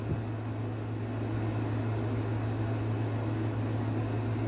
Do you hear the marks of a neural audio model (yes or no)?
no